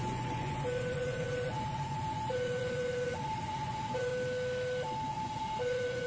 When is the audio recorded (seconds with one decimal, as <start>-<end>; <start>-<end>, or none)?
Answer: 4.1-5.1